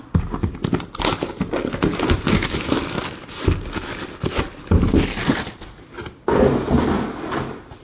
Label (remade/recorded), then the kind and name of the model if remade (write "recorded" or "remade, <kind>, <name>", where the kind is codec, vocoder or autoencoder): recorded